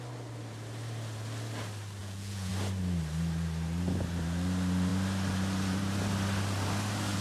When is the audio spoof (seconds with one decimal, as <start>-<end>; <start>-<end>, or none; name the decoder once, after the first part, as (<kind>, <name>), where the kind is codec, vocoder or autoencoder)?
2.0-2.5 (vocoder, Vocos)